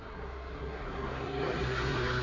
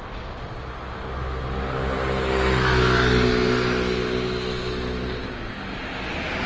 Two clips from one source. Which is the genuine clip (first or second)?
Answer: second